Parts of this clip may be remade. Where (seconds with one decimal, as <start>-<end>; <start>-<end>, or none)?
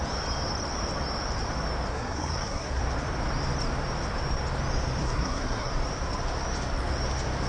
1.9-2.8; 5.0-5.7